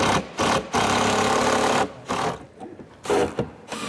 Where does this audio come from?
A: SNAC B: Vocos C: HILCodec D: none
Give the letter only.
D